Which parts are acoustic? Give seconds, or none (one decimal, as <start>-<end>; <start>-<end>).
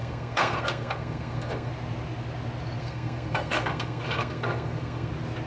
1.7-2.8; 5.1-5.5